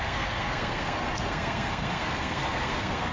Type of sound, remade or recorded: remade